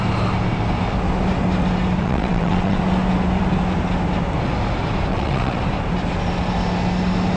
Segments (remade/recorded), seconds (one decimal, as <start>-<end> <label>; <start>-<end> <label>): 0.0-2.0 recorded; 2.0-2.8 remade; 2.8-5.1 recorded; 5.1-5.6 remade; 5.6-7.4 recorded